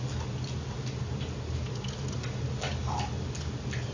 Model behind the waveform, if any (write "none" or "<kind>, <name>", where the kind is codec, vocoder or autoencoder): none